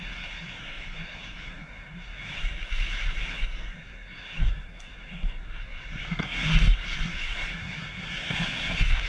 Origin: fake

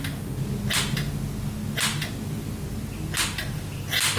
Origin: real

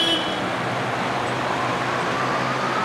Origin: real